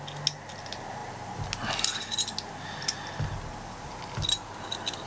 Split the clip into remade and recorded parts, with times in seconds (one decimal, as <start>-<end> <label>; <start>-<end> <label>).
0.0-5.1 recorded